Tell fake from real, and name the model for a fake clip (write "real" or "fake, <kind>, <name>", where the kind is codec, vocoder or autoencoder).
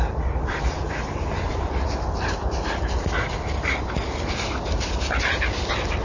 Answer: fake, vocoder, BigVGAN v2